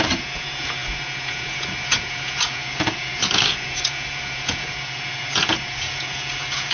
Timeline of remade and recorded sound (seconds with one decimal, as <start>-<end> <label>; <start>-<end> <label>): 0.0-6.7 remade

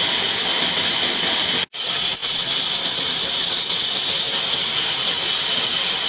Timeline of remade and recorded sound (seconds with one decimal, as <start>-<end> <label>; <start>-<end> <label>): 0.0-6.1 recorded

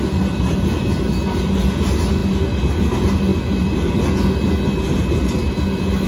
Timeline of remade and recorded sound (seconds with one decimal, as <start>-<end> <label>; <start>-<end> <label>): 0.0-3.3 recorded; 3.3-3.9 remade; 3.9-6.1 recorded

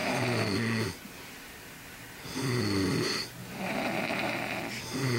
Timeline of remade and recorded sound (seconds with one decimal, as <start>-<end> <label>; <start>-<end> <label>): 0.0-3.4 recorded; 3.4-4.3 remade; 4.3-5.2 recorded

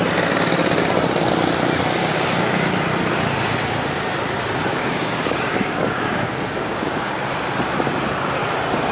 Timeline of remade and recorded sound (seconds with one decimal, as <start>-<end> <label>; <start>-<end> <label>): 0.0-2.0 recorded; 2.0-2.7 remade; 2.7-4.7 recorded; 4.7-7.2 remade; 7.2-8.9 recorded